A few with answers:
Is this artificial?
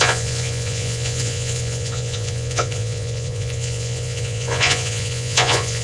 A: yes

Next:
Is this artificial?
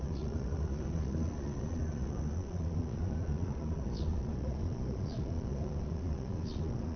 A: yes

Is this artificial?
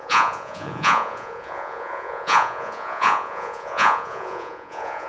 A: yes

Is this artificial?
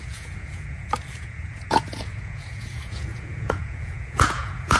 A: yes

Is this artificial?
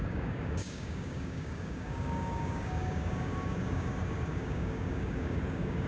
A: yes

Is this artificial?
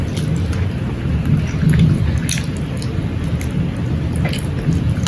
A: no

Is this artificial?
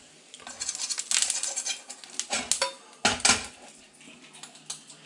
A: no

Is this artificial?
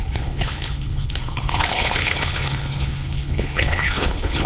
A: yes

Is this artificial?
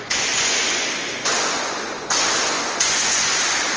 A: yes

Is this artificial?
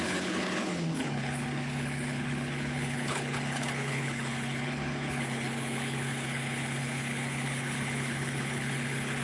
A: yes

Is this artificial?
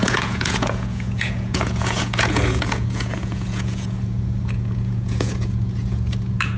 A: yes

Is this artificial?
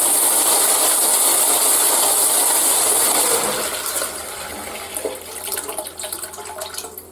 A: no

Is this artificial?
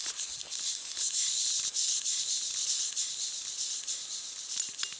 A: no